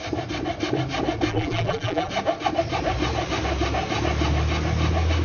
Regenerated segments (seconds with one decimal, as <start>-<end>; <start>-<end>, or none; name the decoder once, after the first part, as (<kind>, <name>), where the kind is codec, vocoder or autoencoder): 1.3-2.1 (vocoder, BigVGAN v2)